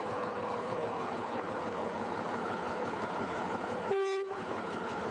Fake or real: fake